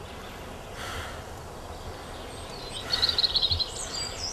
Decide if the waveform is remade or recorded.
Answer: recorded